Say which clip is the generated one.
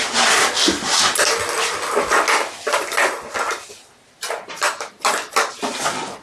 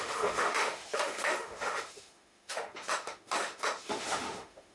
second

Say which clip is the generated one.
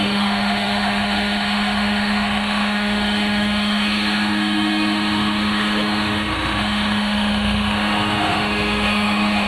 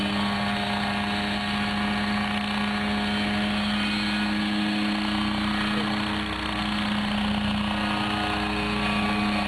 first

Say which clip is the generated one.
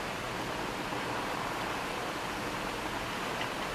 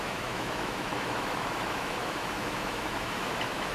second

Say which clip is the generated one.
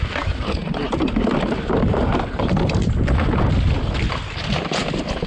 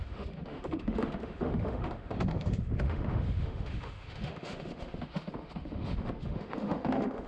second